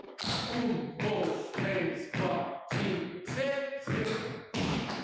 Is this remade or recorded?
remade